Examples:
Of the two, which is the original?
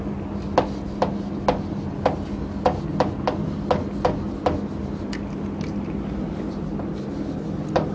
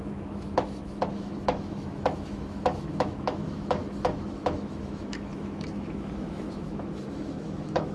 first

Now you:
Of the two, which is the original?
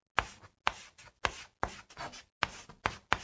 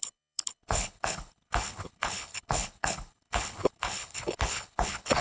first